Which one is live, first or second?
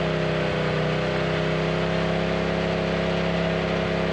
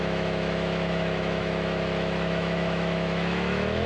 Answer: first